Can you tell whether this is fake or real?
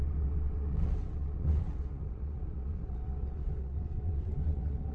fake